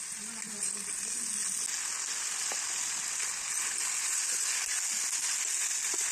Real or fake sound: real